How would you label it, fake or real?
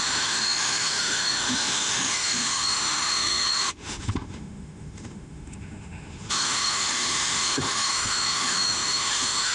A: fake